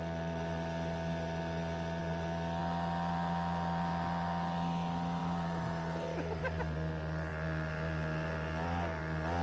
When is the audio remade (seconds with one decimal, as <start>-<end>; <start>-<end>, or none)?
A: 5.2-6.6